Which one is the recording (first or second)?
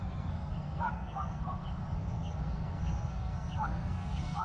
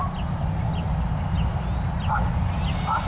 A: second